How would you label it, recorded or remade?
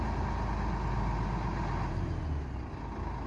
recorded